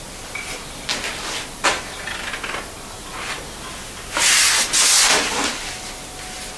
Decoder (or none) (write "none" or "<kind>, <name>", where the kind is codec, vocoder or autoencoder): none